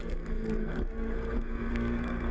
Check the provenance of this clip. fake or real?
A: fake